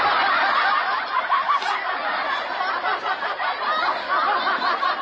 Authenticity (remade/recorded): recorded